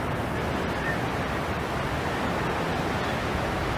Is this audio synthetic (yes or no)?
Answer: no